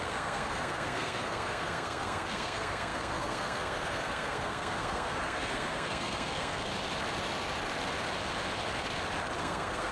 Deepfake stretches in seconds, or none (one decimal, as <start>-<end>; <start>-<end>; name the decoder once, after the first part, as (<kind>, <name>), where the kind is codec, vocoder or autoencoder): 0.0-6.7 (codec, SNAC); 9.4-9.9